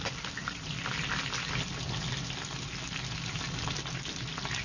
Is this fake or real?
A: real